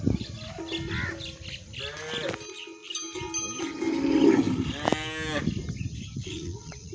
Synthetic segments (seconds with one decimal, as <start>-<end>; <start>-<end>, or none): 6.2-6.9